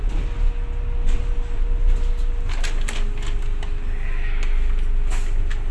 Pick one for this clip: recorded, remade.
recorded